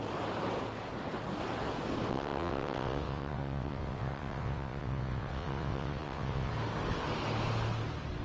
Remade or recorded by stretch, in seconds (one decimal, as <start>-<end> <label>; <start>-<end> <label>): 0.0-2.1 recorded; 2.1-6.5 remade; 6.5-8.2 recorded